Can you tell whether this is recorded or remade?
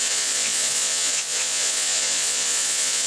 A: remade